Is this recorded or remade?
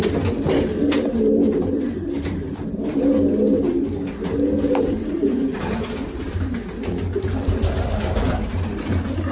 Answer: recorded